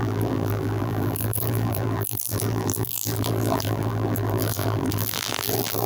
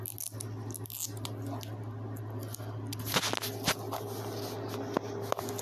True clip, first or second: second